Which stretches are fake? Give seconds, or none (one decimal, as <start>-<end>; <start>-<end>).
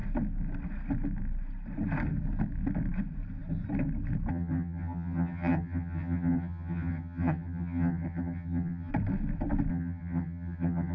4.3-8.9; 9.7-10.9